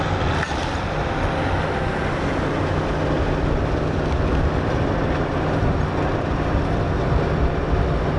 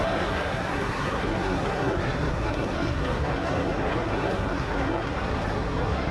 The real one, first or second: first